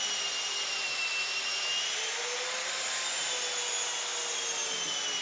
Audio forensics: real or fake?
real